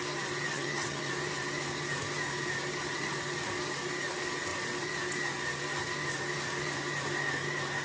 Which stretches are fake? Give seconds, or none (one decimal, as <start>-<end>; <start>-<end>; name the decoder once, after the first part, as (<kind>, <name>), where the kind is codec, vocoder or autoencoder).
0.5-1.1 (vocoder, HiFi-GAN)